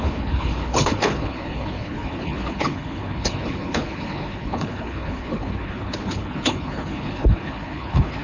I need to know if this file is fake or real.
fake